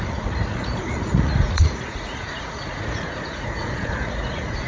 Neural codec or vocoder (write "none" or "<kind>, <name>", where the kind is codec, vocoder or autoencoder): vocoder, Vocos